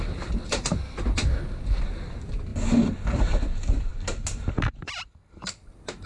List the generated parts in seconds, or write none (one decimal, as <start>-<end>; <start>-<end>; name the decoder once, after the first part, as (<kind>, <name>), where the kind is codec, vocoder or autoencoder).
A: none